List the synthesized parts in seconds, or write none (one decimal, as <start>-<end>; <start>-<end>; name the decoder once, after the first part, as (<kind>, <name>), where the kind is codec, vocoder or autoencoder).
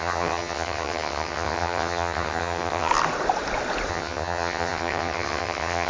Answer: 0.0-2.9 (vocoder, HiFi-GAN); 3.9-5.9